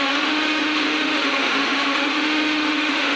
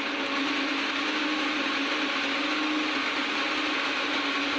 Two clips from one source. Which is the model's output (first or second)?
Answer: first